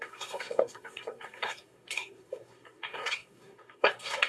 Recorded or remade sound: remade